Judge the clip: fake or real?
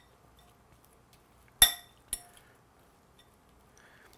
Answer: real